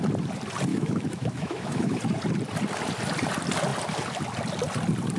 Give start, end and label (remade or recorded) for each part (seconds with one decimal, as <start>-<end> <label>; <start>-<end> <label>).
0.0-0.7 recorded; 0.7-2.0 remade; 2.0-5.2 recorded